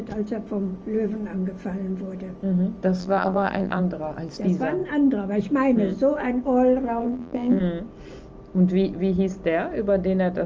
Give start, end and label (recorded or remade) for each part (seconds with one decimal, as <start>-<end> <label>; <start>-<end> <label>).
0.0-3.0 recorded; 3.0-3.8 remade; 3.8-7.0 recorded; 7.0-7.6 remade; 7.6-10.5 recorded